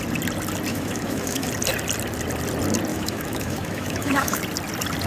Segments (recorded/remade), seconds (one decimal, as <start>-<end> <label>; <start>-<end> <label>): 0.0-0.7 recorded; 0.7-1.5 remade; 1.5-2.9 recorded; 2.9-4.4 remade; 4.4-5.1 recorded